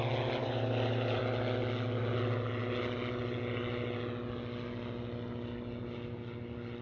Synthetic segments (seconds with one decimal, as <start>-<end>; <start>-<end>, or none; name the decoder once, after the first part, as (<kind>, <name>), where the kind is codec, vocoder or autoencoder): 0.4-1.2 (vocoder, BigVGAN v2)